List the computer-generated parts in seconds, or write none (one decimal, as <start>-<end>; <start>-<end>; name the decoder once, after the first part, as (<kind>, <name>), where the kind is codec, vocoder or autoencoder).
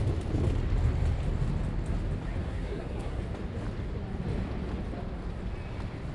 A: 2.4-3.2 (codec, SNAC)